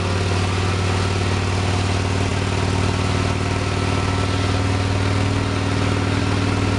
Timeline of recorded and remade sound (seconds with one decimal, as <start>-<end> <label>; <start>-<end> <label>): 0.0-6.8 recorded